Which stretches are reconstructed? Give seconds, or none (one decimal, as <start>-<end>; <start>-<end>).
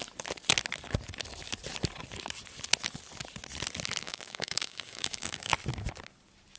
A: 4.0-5.5